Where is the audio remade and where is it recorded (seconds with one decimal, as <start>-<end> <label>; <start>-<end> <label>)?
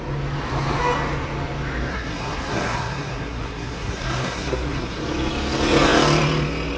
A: 0.0-1.9 recorded; 1.9-5.0 remade; 5.0-6.8 recorded